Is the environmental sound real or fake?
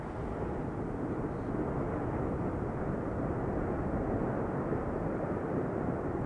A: real